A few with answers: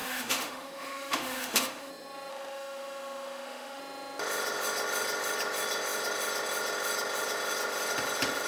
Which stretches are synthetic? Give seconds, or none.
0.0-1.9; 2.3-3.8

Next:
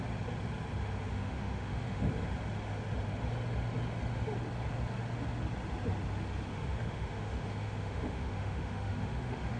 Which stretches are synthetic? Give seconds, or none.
1.1-2.1; 6.5-9.6

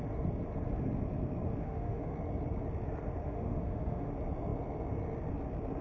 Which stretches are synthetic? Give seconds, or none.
1.6-2.1; 3.2-4.1

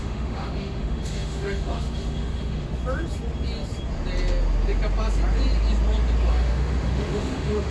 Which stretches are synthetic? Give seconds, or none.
0.0-2.8; 6.3-7.7

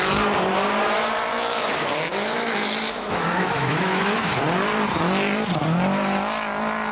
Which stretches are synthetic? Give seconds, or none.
1.3-4.4